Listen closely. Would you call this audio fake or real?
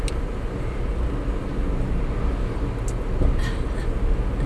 real